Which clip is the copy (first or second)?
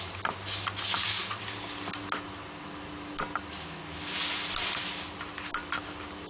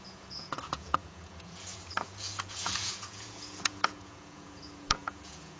second